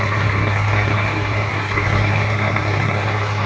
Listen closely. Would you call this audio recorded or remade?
remade